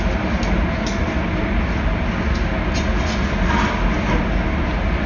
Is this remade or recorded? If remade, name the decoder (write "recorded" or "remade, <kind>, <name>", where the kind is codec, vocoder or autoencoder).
recorded